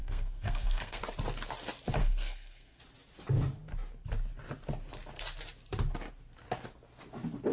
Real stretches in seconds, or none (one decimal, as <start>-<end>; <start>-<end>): 1.0-2.0; 2.8-7.5